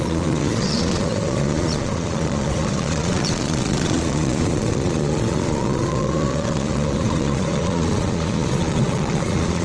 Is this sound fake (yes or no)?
yes